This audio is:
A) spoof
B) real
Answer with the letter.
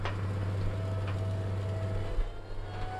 B